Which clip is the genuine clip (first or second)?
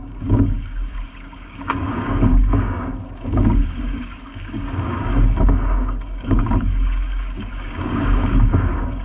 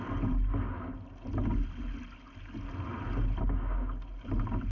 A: second